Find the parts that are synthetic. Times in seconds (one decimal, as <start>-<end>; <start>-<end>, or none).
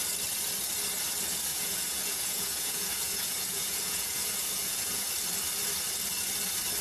1.5-5.0